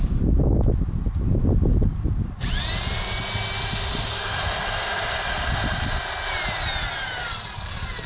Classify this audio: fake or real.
real